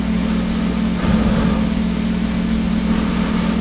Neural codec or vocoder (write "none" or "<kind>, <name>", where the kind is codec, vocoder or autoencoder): none